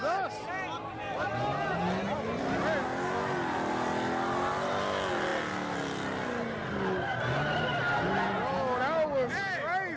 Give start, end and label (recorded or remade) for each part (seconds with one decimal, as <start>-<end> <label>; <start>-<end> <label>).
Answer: 0.0-10.0 recorded